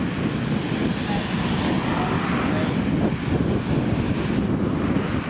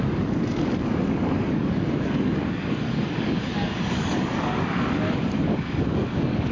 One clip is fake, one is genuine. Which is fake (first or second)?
second